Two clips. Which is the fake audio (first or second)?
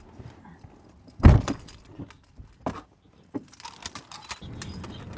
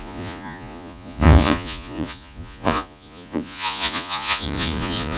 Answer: second